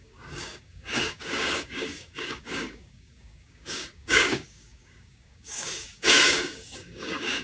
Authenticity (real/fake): fake